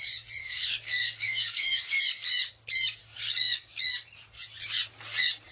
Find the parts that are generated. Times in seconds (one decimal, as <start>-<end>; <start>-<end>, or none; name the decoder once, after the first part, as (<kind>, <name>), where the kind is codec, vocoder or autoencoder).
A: 0.4-2.0 (codec, DAC); 3.0-3.9